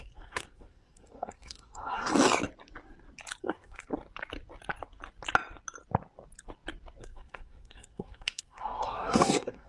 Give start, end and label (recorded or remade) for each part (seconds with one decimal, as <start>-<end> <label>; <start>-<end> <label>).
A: 0.0-2.1 remade; 2.1-3.4 recorded; 3.4-3.9 remade; 3.9-7.0 recorded; 7.0-9.7 remade